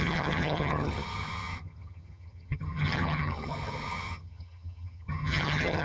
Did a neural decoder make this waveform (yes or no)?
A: yes